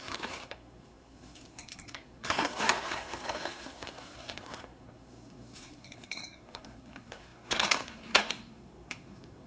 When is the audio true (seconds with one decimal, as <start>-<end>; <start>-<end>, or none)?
none